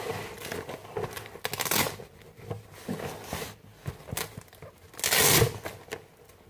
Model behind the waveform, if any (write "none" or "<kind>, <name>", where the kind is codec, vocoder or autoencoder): none